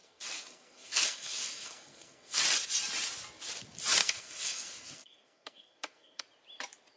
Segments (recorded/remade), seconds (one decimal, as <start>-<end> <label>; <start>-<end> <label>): 0.0-2.4 remade; 2.4-4.0 recorded; 4.0-6.2 remade; 6.2-7.0 recorded